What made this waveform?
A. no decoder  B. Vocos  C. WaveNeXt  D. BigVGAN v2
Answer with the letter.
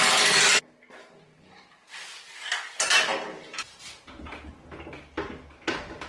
A